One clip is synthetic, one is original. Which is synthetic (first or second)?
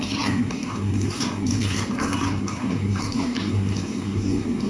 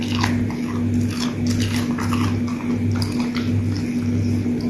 first